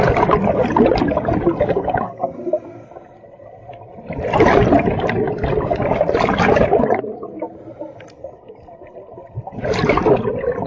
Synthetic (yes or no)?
no